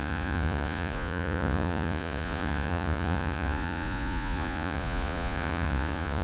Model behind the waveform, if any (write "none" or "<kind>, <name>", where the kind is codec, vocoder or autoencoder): vocoder, Vocos